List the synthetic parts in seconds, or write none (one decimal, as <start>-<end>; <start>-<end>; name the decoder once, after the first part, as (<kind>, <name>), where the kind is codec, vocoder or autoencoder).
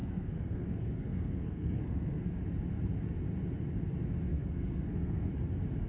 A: 0.0-2.3 (codec, SNAC); 4.3-5.3